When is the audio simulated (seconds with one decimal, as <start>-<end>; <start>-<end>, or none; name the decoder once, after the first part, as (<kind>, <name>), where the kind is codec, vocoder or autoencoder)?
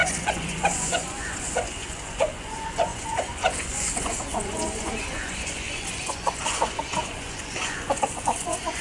0.0-8.8 (vocoder, Vocos)